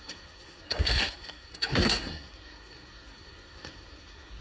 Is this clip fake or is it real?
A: fake